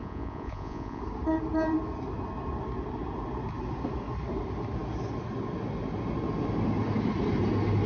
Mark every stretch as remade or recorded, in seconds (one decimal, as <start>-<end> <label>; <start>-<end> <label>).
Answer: 0.0-1.0 remade; 1.0-7.9 recorded